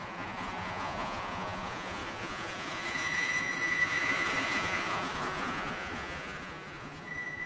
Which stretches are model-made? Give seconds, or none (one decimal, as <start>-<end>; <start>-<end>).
0.0-7.5